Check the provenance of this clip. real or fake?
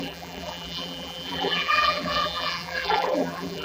fake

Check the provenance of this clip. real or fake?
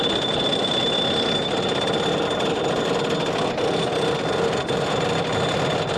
real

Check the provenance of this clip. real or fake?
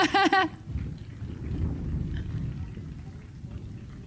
real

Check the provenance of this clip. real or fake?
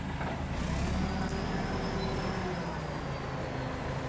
real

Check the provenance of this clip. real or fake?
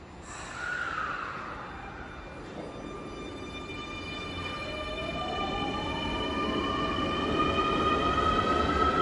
real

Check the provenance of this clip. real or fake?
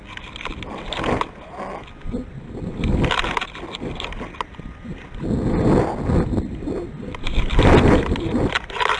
real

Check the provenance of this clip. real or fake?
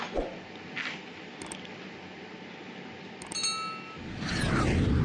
real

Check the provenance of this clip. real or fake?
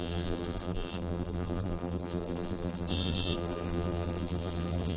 fake